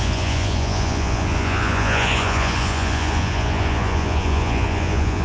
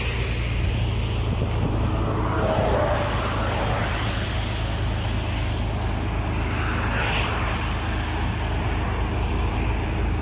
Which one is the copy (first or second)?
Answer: first